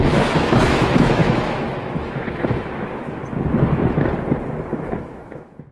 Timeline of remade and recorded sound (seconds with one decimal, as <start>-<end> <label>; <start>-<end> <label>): 0.0-3.2 remade; 3.2-4.8 recorded; 4.8-5.7 remade